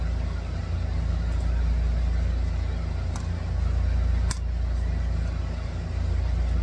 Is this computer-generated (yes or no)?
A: no